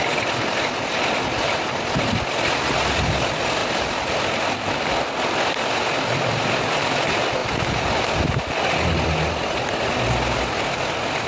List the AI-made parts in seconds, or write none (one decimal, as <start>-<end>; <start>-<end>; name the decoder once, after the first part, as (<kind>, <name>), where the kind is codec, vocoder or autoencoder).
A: 3.6-4.2 (vocoder, BigVGAN v2)